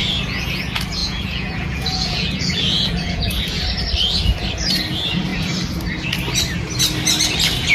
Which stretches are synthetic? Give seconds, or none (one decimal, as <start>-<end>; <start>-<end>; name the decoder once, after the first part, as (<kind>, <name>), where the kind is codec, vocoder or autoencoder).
0.0-0.6 (vocoder, Vocos); 1.0-3.6